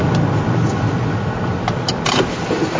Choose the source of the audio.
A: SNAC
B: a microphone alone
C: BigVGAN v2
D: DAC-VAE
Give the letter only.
B